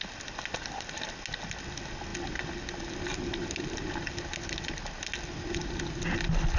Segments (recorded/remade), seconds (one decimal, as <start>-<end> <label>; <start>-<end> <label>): 0.0-6.6 recorded